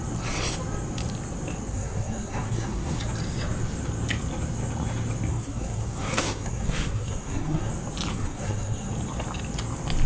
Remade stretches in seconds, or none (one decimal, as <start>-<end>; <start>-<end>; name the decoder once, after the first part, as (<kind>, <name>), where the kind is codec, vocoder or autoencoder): 1.7-3.0 (codec, SNAC); 5.3-7.7; 8.1-8.9